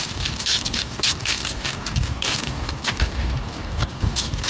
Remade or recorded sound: remade